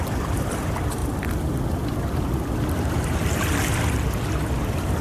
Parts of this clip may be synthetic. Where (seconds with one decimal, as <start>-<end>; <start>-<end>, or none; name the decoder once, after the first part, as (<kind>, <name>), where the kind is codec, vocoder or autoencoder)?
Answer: none

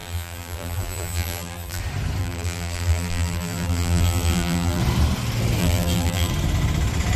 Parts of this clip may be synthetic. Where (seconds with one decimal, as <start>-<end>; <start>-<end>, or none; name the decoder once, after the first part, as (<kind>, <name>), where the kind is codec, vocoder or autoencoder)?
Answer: 0.0-1.8 (vocoder, BigVGAN v2); 2.2-4.8; 5.6-6.3

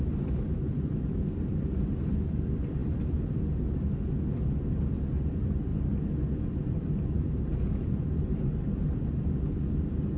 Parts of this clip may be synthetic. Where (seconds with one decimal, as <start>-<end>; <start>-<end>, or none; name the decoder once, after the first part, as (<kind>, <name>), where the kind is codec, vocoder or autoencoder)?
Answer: 0.0-5.7 (vocoder, BigVGAN v2); 6.4-7.5